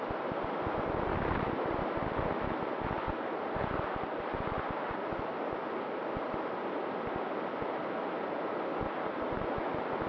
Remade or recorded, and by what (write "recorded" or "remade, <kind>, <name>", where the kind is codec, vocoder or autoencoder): recorded